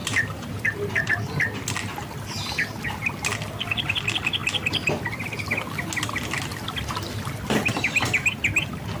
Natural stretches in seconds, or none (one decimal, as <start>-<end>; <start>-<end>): 0.9-9.0